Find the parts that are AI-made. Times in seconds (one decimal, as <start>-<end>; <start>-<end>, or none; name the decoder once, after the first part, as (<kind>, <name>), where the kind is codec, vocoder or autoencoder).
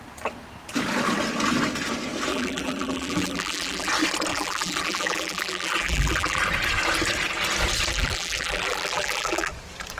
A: 2.3-3.9 (vocoder, BigVGAN v2); 4.3-6.4; 7.9-9.5